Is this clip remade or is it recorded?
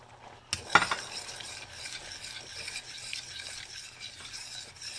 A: recorded